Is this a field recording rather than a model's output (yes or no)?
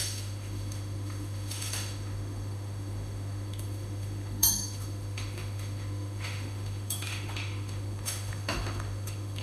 no